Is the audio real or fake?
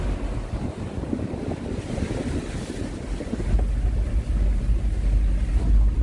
real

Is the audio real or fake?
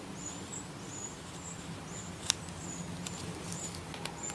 real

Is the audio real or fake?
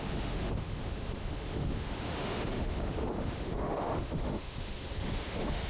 fake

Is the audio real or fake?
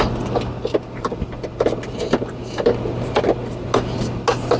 real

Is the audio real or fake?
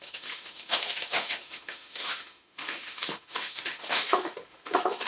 fake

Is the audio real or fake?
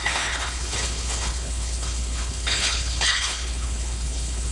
fake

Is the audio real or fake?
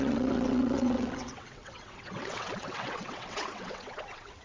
fake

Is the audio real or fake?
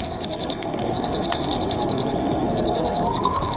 fake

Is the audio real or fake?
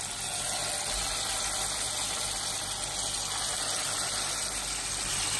real